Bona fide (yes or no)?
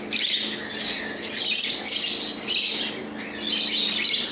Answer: yes